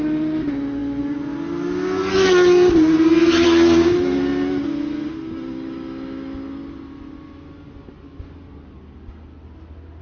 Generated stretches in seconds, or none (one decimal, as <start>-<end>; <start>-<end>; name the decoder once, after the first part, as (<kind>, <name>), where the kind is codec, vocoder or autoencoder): none